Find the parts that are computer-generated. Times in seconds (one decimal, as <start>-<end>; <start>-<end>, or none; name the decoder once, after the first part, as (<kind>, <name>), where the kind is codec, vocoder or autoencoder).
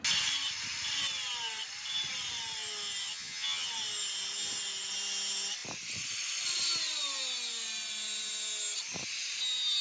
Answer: 3.0-3.7 (vocoder, HiFi-GAN)